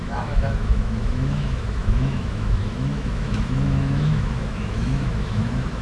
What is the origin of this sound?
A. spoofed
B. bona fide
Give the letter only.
A